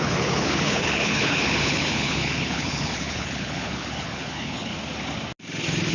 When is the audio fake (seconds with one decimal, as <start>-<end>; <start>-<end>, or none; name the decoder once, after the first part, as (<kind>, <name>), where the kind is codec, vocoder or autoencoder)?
0.0-4.7 (codec, HILCodec)